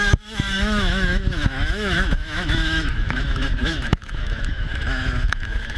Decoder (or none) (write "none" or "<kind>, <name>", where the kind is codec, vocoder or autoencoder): autoencoder, DAC-VAE